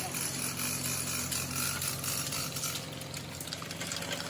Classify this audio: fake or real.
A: real